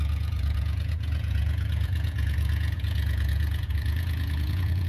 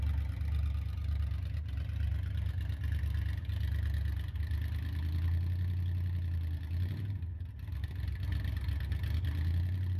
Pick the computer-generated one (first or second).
first